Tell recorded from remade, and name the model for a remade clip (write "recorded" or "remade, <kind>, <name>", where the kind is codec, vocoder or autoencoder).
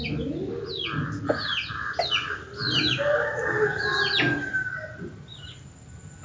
recorded